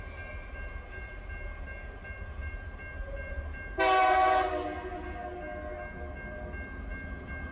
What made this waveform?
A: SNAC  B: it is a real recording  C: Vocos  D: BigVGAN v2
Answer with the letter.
B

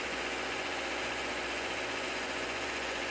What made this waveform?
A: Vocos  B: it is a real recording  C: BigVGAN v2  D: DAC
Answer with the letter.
A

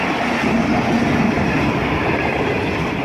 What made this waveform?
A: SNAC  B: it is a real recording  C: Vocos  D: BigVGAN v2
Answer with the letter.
B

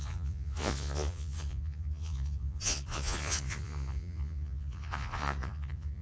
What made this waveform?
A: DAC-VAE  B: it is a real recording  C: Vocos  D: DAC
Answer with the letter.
C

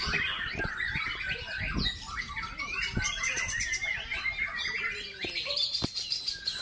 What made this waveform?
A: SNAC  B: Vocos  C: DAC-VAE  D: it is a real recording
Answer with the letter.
D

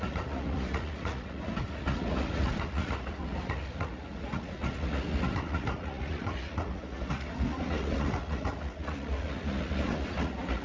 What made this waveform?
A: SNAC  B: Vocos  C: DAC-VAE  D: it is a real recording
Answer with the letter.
B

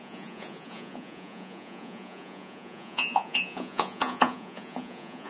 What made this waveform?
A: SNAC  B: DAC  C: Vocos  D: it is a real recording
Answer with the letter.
C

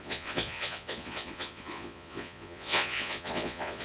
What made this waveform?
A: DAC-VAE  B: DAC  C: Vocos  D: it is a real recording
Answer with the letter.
C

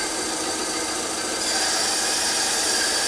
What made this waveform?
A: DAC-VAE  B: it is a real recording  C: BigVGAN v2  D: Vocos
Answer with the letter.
B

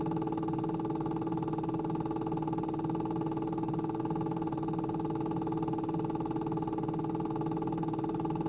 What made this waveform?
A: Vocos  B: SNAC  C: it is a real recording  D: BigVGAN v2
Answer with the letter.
C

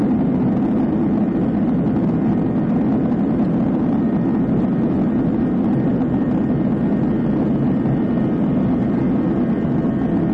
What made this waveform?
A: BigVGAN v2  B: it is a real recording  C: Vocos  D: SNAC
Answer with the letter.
B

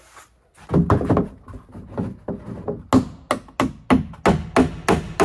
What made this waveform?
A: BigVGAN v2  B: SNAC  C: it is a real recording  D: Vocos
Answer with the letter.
C